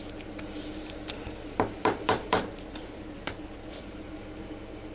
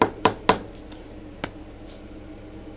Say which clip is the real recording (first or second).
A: second